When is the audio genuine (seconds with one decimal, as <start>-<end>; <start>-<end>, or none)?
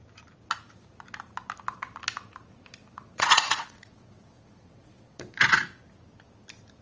0.0-2.8; 5.8-6.8